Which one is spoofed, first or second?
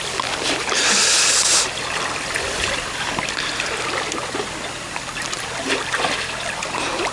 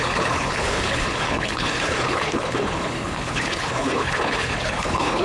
second